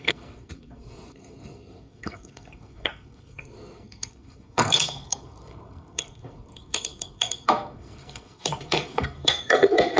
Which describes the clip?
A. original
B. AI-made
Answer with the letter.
B